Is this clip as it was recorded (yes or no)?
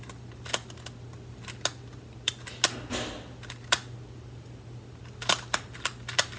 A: yes